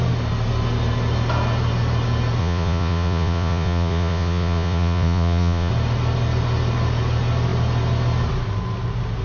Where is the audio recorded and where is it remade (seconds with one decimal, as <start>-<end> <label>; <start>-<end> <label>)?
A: 0.0-2.4 recorded; 2.4-5.7 remade; 5.7-9.2 recorded